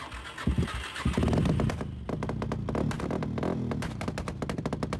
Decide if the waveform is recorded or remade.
recorded